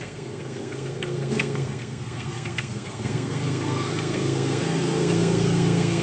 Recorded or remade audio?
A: remade